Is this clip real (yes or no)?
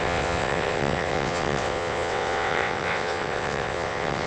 no